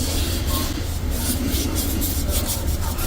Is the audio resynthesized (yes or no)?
no